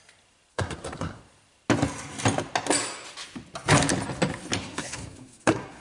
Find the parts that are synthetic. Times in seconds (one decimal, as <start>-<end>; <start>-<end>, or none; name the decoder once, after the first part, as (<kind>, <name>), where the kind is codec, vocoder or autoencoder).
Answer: 0.5-1.2 (codec, SNAC); 4.6-5.8